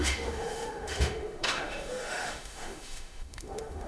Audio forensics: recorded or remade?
remade